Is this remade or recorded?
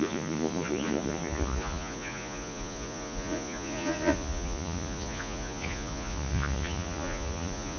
remade